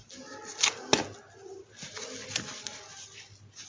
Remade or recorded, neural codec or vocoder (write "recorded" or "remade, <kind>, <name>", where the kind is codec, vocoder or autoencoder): recorded